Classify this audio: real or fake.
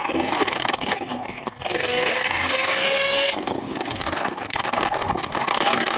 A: fake